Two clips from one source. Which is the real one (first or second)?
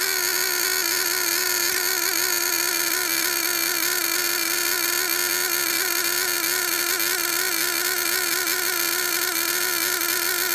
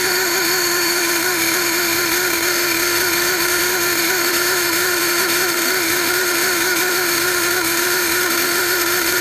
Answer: first